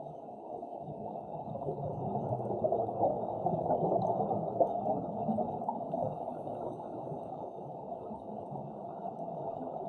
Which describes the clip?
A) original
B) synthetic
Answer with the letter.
B